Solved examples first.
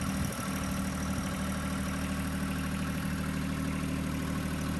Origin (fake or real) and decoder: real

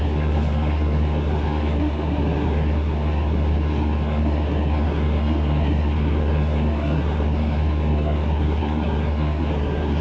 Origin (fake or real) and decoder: fake, codec, SNAC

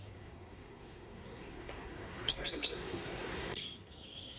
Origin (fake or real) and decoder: fake, codec, SNAC